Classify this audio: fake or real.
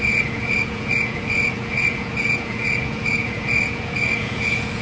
fake